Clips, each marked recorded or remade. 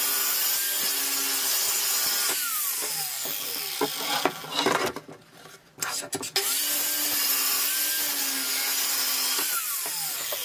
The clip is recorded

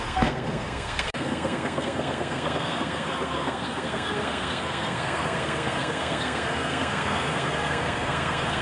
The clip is remade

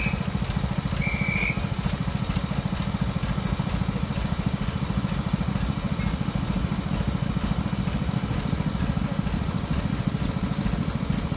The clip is recorded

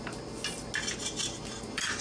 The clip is recorded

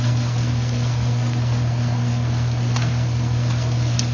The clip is remade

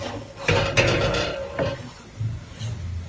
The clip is recorded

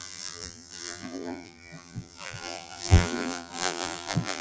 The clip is remade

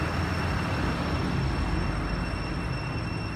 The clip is recorded